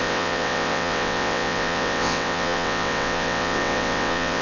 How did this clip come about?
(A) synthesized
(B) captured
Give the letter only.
A